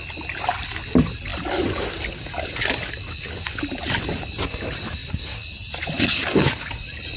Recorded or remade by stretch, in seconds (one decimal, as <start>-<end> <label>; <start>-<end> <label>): 0.0-7.2 recorded